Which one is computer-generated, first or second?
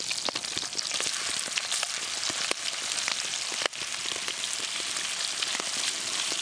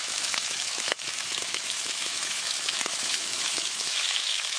second